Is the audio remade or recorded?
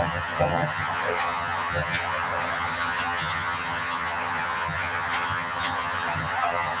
remade